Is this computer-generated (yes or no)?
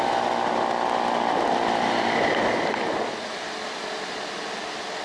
no